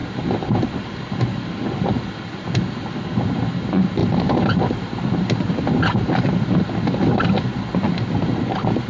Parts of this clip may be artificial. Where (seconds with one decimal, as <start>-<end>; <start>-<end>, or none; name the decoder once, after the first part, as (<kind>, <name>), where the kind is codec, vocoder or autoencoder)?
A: none